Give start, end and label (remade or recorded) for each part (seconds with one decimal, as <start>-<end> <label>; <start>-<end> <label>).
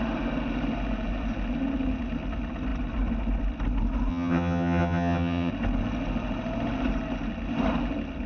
0.0-4.1 recorded; 4.1-5.5 remade; 5.5-8.3 recorded